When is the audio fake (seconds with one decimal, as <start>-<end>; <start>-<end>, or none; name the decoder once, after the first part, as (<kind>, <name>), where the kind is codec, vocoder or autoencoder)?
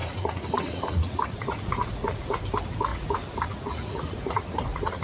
0.0-2.4 (vocoder, Vocos); 2.9-5.0